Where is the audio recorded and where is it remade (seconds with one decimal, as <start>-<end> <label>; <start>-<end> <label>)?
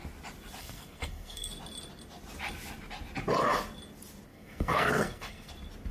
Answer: 0.0-0.6 recorded; 0.6-1.5 remade; 1.5-4.3 recorded; 4.3-5.5 remade; 5.5-5.9 recorded